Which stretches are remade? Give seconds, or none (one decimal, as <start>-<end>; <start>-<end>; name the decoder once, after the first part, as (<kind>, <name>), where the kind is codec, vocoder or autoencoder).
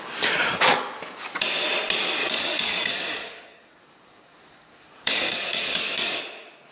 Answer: 2.2-6.2 (codec, DAC)